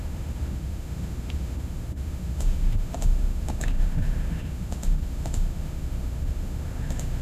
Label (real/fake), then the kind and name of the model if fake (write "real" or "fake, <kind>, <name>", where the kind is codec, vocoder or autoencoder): fake, autoencoder, DAC-VAE